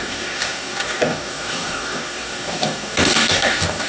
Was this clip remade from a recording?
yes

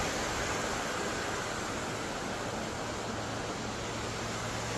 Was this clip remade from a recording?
no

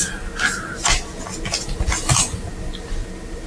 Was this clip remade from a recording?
no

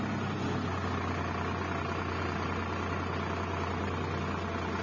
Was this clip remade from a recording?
no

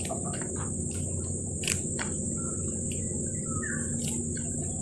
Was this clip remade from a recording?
no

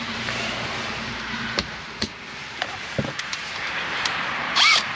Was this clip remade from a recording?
yes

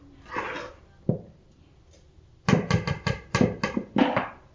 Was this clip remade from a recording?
no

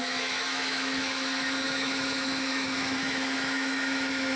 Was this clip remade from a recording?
yes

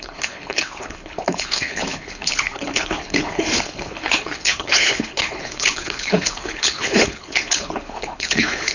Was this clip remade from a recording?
yes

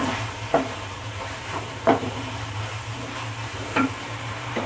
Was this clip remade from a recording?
yes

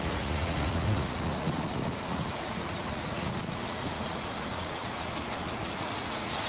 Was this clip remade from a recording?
yes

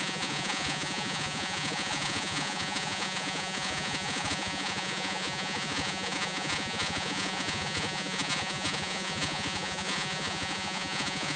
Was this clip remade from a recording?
yes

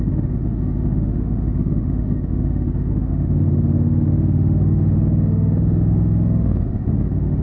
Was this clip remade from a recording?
yes